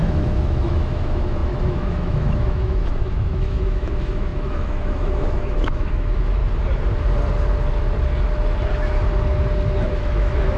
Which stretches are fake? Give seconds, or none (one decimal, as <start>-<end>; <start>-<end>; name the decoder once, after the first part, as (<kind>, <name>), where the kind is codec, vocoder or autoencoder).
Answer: 0.0-6.4 (autoencoder, DAC-VAE); 10.0-10.6